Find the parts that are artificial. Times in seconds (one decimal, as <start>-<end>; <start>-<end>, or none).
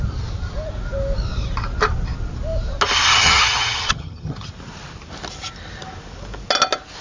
3.1-4.5